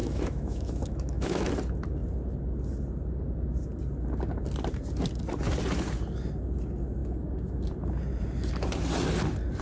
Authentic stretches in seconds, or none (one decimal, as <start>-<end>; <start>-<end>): 1.5-9.6

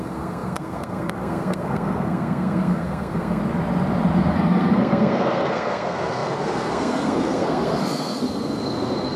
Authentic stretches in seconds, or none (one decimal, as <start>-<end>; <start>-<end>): 3.4-4.3

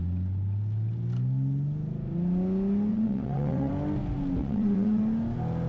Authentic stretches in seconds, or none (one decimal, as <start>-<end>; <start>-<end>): 0.0-2.9; 3.7-4.4; 5.0-5.7

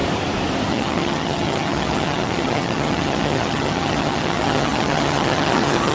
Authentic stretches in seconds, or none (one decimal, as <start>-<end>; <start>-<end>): 0.0-0.7